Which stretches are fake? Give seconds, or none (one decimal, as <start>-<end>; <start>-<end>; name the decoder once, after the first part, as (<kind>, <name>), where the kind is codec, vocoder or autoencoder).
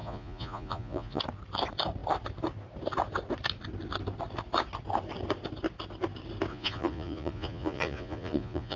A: 0.0-1.2 (vocoder, Vocos); 6.5-8.8